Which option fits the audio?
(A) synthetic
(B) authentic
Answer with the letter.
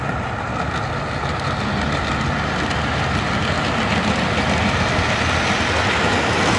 B